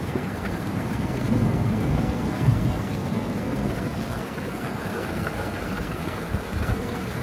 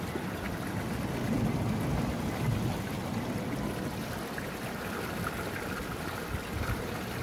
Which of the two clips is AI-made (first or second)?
first